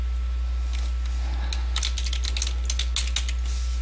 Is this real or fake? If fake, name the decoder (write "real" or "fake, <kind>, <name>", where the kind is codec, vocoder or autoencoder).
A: real